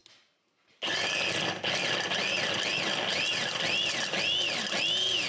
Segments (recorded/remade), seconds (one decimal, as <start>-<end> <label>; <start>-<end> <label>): 0.0-5.3 recorded

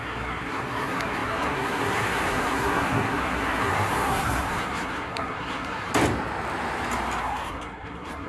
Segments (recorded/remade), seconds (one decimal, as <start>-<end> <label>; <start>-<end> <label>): 0.0-5.9 remade; 5.9-7.2 recorded; 7.2-8.3 remade

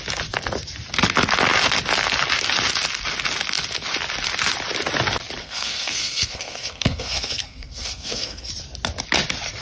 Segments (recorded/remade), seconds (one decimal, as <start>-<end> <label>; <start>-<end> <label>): 0.0-5.4 recorded; 5.4-8.5 remade; 8.5-9.6 recorded

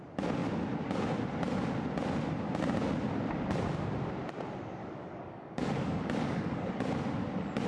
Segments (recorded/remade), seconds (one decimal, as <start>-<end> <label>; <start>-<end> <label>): 0.0-4.8 recorded; 4.8-6.8 remade; 6.8-7.7 recorded

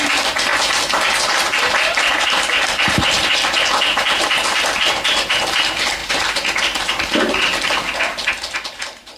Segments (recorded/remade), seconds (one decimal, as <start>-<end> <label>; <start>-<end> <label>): 0.0-0.5 recorded; 0.5-4.9 remade; 4.9-9.2 recorded

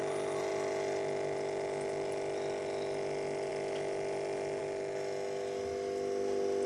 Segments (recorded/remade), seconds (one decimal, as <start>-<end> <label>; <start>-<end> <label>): 0.0-6.7 recorded

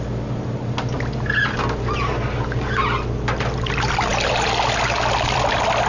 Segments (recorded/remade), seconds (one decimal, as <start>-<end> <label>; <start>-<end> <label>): 0.0-5.9 recorded

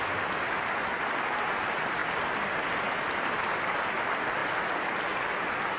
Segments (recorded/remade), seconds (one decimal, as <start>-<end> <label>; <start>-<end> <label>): 0.0-5.8 recorded